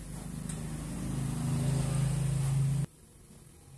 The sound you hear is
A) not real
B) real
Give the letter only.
B